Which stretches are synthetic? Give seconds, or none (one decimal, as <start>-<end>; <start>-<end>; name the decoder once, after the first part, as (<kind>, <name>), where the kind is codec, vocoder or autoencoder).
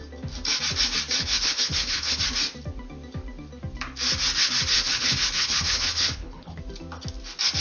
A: 1.2-2.2 (codec, HILCodec); 4.7-6.6